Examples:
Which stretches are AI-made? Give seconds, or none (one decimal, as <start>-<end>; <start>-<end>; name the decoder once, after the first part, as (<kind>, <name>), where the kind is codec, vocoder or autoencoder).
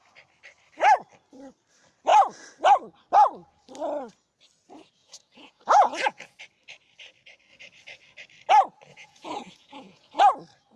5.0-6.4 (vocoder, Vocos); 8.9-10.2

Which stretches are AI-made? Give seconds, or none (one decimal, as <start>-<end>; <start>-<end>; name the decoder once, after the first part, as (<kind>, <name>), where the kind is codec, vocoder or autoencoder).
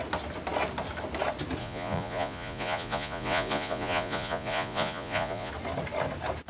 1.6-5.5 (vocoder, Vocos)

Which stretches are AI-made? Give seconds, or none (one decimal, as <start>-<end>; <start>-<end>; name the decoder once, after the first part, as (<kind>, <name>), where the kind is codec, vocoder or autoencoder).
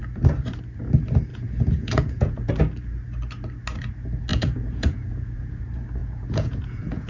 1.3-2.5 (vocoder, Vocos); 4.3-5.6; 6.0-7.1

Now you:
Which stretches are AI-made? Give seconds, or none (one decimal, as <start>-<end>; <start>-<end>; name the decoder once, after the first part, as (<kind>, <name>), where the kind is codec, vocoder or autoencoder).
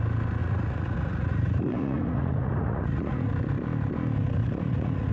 0.4-3.3 (vocoder, Vocos); 4.4-5.1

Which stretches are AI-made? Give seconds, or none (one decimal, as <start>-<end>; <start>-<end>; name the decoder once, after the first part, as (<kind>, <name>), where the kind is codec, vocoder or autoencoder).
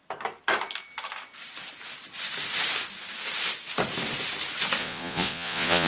4.8-5.9 (vocoder, Vocos)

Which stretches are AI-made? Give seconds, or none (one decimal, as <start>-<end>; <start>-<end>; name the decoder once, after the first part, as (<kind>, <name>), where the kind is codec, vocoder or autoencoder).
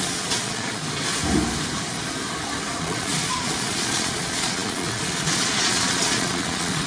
0.0-0.8 (vocoder, Vocos); 2.8-6.9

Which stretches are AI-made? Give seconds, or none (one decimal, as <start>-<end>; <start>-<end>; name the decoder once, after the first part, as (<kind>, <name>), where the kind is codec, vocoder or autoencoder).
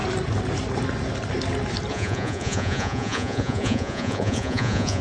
1.9-5.0 (vocoder, Vocos)